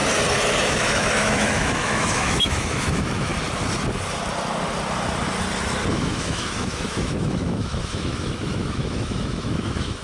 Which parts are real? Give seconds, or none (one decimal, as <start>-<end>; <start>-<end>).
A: 0.0-0.6; 3.3-5.9